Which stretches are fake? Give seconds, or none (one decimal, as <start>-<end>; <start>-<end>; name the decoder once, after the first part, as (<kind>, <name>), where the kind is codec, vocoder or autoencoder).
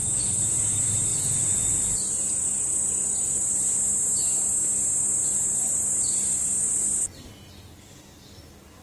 1.1-2.2 (vocoder, Vocos)